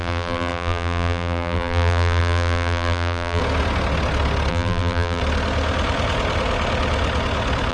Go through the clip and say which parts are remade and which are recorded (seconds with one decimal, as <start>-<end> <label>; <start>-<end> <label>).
0.0-3.4 remade; 3.4-4.5 recorded; 4.5-5.2 remade; 5.2-7.7 recorded